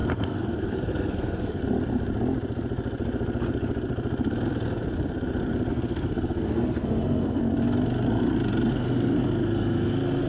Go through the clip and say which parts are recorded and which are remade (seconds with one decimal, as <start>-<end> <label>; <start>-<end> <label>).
0.0-1.6 remade; 1.6-5.7 recorded; 5.7-7.4 remade; 7.4-8.7 recorded; 8.7-10.3 remade